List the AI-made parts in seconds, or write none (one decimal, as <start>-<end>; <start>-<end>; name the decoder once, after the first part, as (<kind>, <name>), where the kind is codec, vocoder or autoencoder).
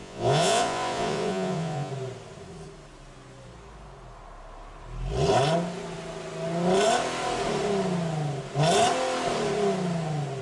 0.0-1.9 (vocoder, Vocos)